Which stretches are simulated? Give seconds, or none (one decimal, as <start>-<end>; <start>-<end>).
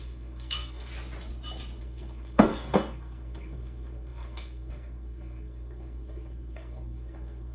0.0-0.9; 1.8-7.5